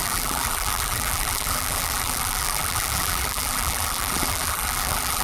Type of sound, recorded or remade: remade